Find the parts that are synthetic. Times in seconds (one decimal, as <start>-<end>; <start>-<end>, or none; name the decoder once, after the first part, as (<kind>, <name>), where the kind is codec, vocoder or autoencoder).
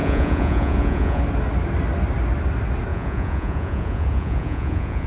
0.0-1.2 (vocoder, Vocos); 2.9-5.1